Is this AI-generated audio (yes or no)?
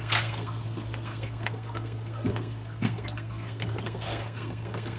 yes